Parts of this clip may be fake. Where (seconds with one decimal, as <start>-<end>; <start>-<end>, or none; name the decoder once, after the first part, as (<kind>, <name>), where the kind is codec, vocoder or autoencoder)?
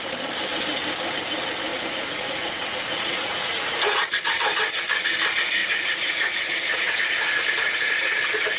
1.7-4.2 (vocoder, Vocos); 5.6-8.2